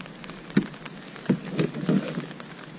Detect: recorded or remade recorded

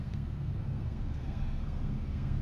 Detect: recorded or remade remade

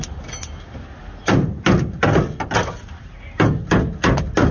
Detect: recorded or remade recorded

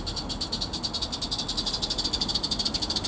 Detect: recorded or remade recorded